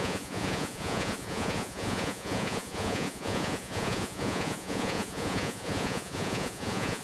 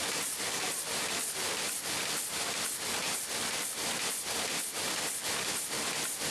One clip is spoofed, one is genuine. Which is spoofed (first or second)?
first